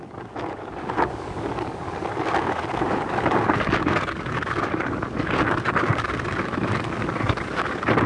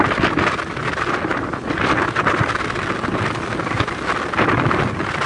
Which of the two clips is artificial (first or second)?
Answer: first